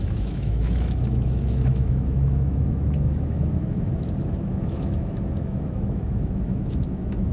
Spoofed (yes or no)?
yes